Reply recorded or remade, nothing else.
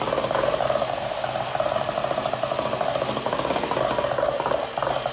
recorded